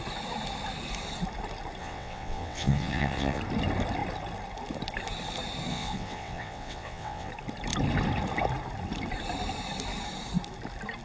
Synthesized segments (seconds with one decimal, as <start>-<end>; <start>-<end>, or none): 1.8-3.4; 5.7-7.3